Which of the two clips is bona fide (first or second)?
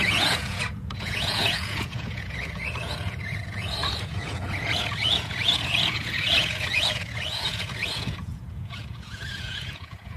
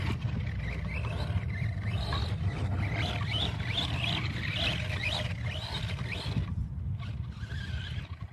second